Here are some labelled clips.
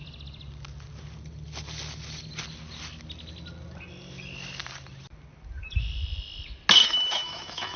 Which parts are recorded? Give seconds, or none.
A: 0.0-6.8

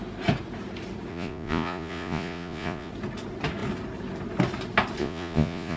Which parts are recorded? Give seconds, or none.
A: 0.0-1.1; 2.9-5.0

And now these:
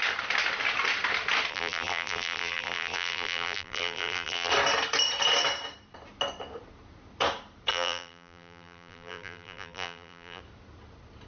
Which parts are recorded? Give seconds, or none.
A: 0.0-1.5; 4.5-7.7; 10.4-11.3

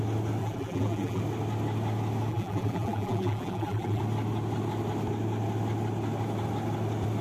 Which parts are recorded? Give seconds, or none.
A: 0.0-0.4; 1.2-2.3; 4.0-7.2